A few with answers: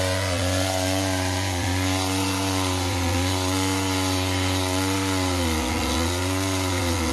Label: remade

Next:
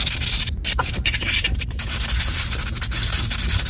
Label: recorded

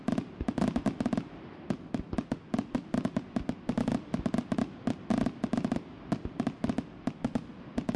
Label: recorded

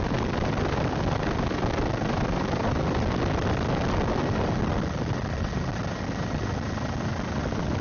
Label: recorded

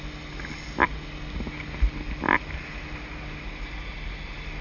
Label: recorded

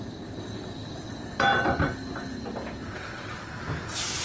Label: recorded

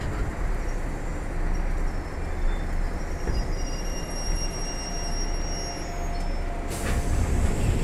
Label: recorded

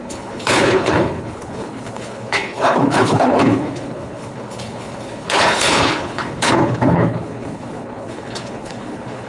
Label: remade